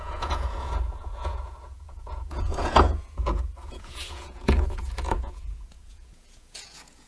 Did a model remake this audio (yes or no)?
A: yes